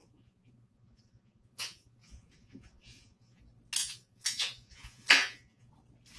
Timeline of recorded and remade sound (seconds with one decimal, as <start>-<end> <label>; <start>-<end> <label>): 0.0-3.4 remade; 3.4-3.8 recorded; 3.8-5.7 remade; 5.7-6.2 recorded